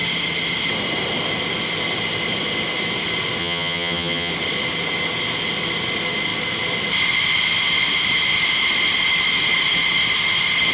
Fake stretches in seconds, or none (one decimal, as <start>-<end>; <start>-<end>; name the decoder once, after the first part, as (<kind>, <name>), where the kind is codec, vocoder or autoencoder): 3.4-4.3 (vocoder, HiFi-GAN)